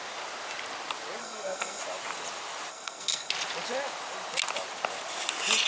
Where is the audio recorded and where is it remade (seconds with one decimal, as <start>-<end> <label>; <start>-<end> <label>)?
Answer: 0.0-1.2 recorded; 1.2-1.8 remade; 1.8-2.7 recorded; 2.7-3.3 remade; 3.3-5.7 recorded